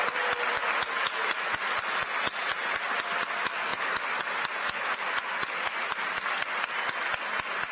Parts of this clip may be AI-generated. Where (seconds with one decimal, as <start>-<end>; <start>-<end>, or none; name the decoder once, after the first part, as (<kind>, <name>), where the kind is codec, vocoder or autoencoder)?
none